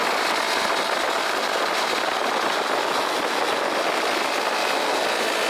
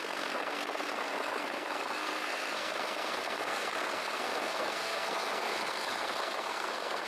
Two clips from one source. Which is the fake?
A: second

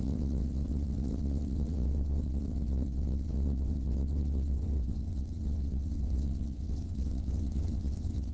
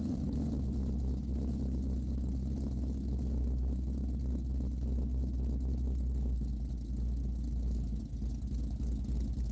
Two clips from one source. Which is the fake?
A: first